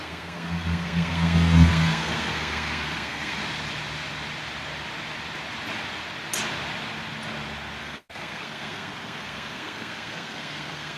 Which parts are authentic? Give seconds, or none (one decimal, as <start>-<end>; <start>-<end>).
3.4-7.8